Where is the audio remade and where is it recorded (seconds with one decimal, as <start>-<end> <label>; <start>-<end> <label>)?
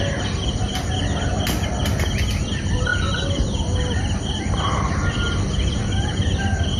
0.0-6.8 recorded